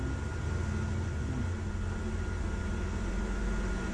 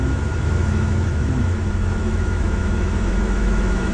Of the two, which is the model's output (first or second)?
second